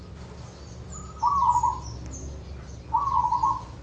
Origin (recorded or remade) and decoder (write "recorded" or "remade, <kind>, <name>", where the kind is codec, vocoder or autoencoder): recorded